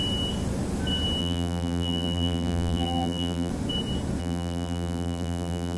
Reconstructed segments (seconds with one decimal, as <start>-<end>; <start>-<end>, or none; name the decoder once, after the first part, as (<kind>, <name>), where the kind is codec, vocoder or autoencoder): 1.2-3.5 (vocoder, BigVGAN v2); 4.2-5.8